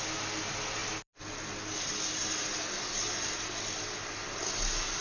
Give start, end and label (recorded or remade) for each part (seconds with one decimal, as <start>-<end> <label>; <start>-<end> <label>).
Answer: 0.0-5.0 recorded